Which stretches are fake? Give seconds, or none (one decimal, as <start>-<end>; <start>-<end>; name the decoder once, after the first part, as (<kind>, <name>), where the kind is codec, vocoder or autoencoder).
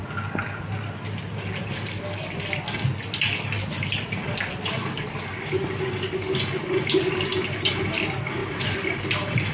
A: none